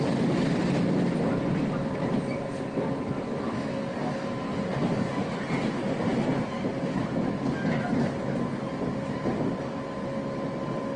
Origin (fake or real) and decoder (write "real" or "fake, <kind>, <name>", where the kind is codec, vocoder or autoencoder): real